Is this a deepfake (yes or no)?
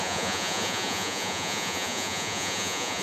yes